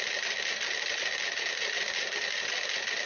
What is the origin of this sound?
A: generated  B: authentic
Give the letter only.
B